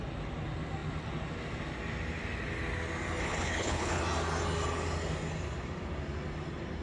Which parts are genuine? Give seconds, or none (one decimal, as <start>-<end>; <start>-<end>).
0.0-3.2; 4.0-6.8